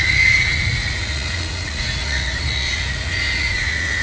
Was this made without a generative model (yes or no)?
no